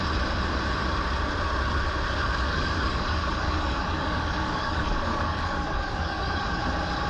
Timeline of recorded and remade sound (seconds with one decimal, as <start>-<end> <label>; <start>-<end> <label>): 0.0-2.3 recorded; 2.3-6.6 remade; 6.6-7.1 recorded